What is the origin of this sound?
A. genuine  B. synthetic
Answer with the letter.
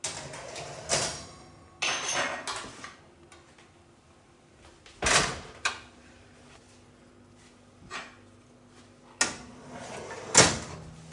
A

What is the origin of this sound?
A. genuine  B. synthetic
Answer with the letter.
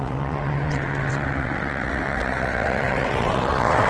B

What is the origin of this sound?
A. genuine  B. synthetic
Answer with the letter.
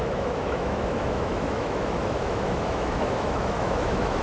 B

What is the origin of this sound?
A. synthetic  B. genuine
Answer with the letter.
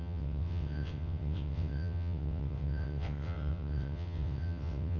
A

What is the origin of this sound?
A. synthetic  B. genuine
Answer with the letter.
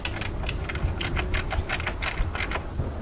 B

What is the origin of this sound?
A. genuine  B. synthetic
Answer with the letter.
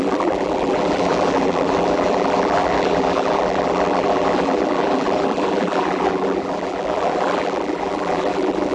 B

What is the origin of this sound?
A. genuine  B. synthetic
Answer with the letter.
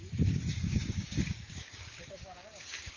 B